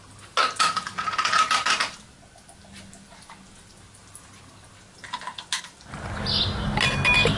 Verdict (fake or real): real